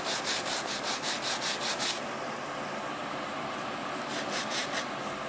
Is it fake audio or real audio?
real